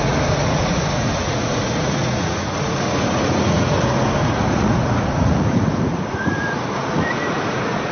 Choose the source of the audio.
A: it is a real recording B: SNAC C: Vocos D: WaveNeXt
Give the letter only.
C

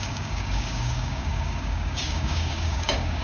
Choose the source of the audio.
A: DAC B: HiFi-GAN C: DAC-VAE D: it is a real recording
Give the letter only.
A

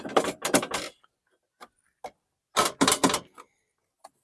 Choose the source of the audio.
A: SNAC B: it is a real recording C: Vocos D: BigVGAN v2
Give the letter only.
B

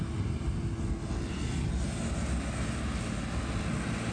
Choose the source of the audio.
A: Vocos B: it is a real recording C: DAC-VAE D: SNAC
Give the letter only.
B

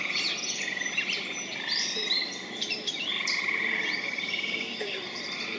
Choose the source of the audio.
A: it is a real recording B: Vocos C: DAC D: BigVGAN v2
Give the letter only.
D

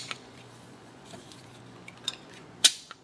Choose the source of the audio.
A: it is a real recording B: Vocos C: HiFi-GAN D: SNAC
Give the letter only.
B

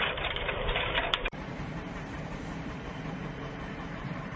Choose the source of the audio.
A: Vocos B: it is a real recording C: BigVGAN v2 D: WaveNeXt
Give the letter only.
C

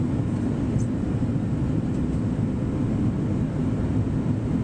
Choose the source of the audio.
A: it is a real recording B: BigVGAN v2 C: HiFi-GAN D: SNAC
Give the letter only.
A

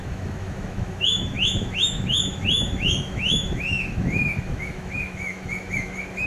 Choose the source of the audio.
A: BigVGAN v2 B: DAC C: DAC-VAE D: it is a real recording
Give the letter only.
C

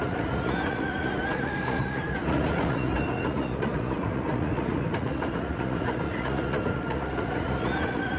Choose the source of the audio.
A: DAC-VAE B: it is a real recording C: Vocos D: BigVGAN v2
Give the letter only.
C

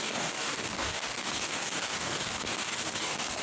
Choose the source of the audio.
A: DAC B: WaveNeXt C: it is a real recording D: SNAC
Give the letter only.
A